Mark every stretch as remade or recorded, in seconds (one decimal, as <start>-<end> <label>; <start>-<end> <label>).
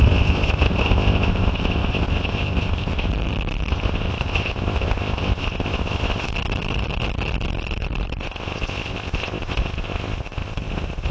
0.0-3.1 remade; 3.1-3.7 recorded; 3.7-6.3 remade; 6.3-8.2 recorded; 8.2-11.1 remade